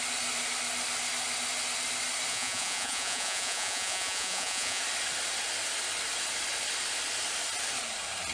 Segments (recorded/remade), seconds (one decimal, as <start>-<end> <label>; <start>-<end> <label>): 0.0-2.3 recorded; 2.3-4.8 remade; 4.8-8.3 recorded